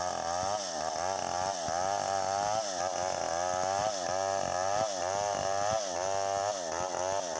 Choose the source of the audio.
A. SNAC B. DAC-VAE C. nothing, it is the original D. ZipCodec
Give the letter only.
C